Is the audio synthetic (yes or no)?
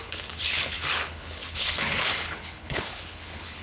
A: yes